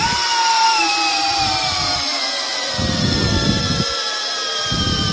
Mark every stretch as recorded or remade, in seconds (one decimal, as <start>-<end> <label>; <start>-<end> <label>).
0.0-0.5 recorded; 0.5-3.6 remade; 3.6-5.1 recorded